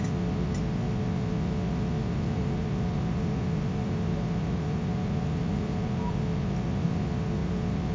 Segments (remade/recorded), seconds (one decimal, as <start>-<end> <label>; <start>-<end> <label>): 0.0-2.0 recorded; 2.0-6.1 remade; 6.1-7.4 recorded; 7.4-7.9 remade